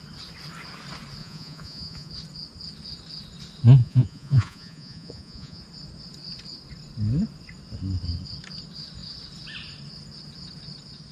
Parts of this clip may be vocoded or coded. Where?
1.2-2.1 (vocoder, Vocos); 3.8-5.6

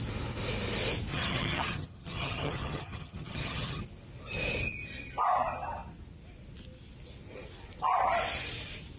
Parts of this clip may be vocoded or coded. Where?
1.1-3.8 (vocoder, HiFi-GAN)

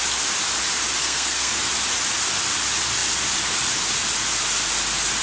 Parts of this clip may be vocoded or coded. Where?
1.0-1.5 (codec, SNAC)

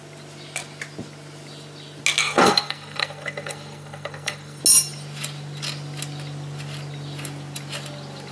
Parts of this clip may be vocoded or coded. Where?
2.2-4.6 (codec, SNAC)